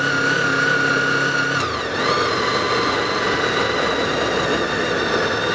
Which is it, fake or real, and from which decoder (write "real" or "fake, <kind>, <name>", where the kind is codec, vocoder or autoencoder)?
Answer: real